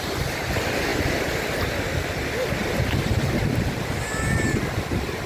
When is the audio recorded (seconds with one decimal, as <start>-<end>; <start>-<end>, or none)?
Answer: 0.0-5.3